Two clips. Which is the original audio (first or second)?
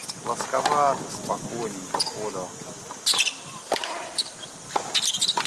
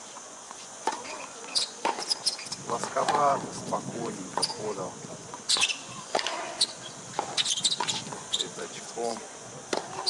first